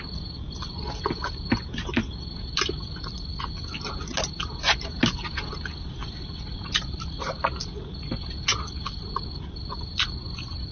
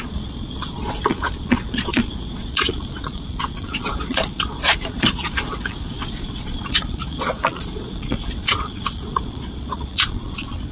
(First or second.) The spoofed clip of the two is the second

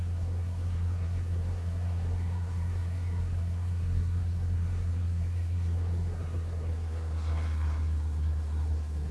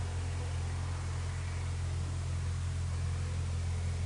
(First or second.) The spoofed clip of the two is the first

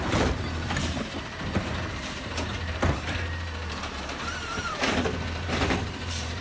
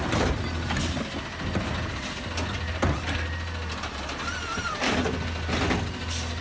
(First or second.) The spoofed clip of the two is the first